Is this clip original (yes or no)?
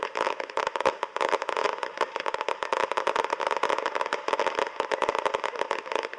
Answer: yes